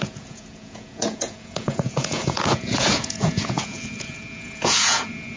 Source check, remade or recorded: remade